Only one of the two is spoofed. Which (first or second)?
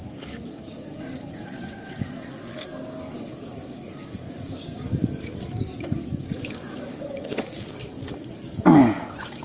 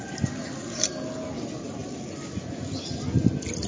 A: first